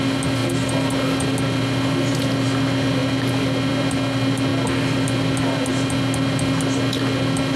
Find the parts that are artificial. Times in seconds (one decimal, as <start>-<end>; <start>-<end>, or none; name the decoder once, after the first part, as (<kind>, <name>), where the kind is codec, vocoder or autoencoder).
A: none